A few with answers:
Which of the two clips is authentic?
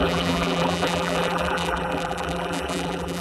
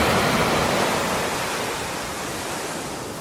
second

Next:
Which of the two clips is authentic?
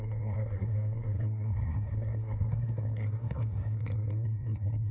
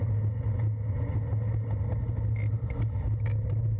second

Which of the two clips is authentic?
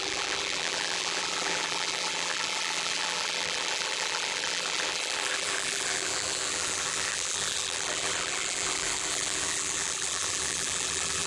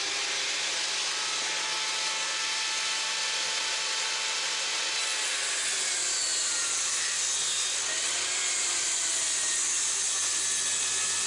second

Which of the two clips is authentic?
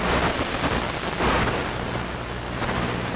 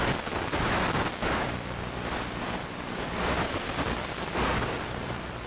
first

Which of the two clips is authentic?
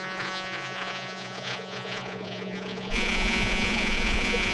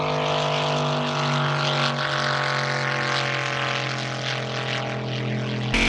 second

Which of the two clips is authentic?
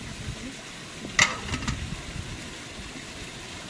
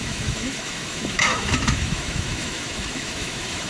first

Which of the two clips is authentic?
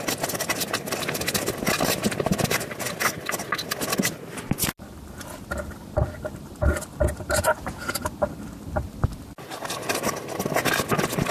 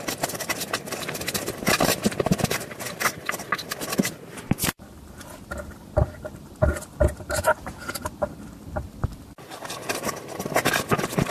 first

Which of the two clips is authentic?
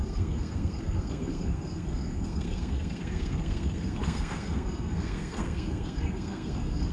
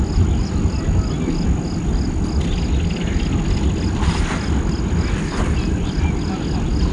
second